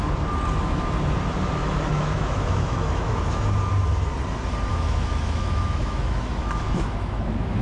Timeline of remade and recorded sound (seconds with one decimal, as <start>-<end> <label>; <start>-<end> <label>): 0.0-1.6 recorded; 1.6-3.4 remade; 3.4-4.7 recorded; 4.7-7.6 remade